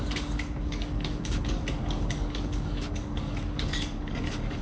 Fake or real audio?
fake